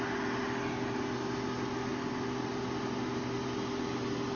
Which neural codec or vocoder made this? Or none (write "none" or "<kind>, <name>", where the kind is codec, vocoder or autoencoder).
none